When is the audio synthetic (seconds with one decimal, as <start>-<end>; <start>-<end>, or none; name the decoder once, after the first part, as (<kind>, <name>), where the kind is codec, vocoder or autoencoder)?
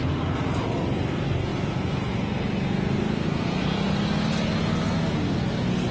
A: none